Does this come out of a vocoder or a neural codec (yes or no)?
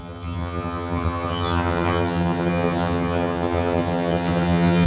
yes